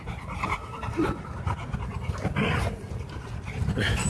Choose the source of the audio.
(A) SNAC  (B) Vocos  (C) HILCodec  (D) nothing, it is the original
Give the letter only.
D